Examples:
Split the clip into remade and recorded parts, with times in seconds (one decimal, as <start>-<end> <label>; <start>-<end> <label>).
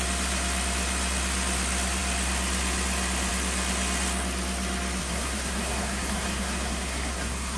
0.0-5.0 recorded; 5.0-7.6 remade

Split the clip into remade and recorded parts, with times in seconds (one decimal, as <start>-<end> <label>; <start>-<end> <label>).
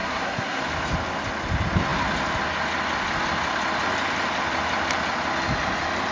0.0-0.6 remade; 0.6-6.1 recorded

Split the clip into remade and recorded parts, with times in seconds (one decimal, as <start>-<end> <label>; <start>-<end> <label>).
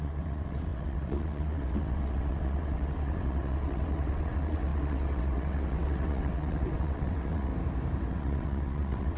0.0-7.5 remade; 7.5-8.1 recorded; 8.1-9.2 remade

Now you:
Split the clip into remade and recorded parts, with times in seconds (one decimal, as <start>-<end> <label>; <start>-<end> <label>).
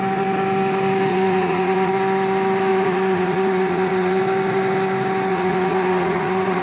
0.0-1.1 recorded; 1.1-1.9 remade; 1.9-2.7 recorded; 2.7-4.2 remade; 4.2-5.3 recorded; 5.3-6.6 remade